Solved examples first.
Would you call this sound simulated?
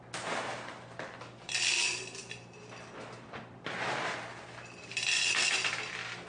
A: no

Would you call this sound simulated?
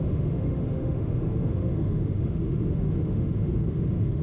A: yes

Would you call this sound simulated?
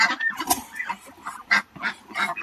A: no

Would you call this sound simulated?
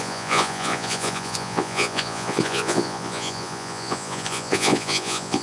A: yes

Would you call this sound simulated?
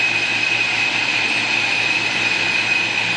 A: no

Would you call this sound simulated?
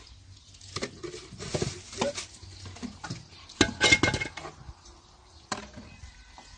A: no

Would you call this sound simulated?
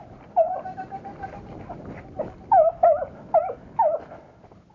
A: no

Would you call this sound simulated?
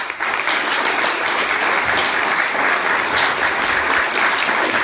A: no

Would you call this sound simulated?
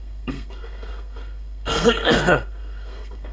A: yes